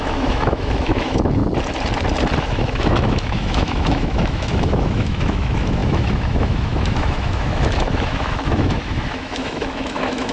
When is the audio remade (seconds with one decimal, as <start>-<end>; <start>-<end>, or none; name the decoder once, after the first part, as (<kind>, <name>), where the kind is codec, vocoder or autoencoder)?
0.0-1.4 (autoencoder, DAC-VAE); 2.4-10.3